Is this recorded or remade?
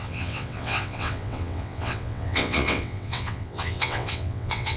remade